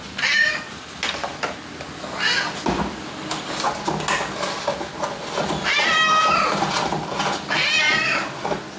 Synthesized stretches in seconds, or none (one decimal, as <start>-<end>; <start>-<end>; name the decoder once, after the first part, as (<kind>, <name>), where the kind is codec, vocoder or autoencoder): none